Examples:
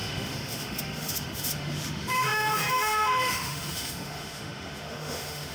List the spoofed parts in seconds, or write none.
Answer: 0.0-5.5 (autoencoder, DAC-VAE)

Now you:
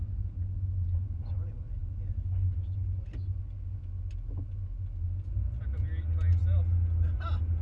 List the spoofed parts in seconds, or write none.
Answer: none

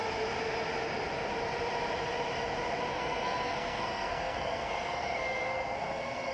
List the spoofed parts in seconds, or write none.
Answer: 2.9-6.3 (codec, SNAC)

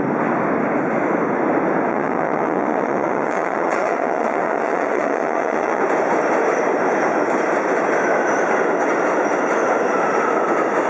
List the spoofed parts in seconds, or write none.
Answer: 1.9-5.8 (vocoder, Vocos)

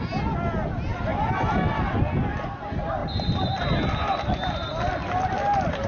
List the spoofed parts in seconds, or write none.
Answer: none

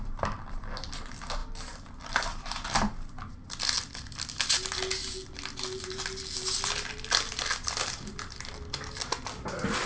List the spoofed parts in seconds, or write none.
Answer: none